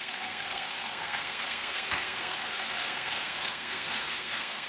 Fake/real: fake